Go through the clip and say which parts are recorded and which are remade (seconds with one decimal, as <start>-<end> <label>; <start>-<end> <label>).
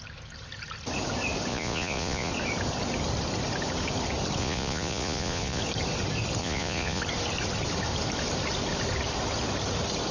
0.0-1.5 recorded; 1.5-2.3 remade; 2.3-4.4 recorded; 4.4-5.6 remade; 5.6-6.4 recorded; 6.4-7.0 remade; 7.0-10.1 recorded